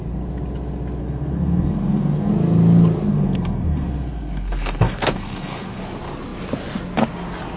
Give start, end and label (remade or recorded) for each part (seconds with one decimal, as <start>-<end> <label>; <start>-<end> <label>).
0.0-1.0 recorded; 1.0-2.3 remade; 2.3-3.1 recorded; 3.1-5.8 remade; 5.8-7.6 recorded